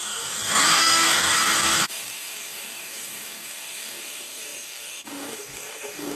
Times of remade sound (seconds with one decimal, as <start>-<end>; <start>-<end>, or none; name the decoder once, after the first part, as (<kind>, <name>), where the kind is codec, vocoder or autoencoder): 0.0-6.2 (codec, DAC)